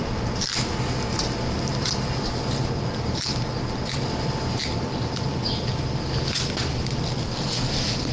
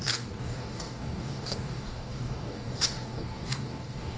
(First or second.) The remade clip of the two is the second